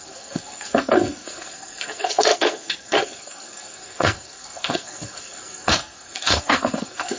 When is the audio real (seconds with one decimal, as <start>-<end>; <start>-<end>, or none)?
none